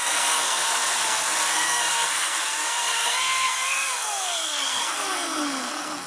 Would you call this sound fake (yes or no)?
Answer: yes